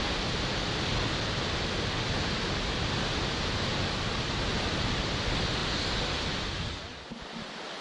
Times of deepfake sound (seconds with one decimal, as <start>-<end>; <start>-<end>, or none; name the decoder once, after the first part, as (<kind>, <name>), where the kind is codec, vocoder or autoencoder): none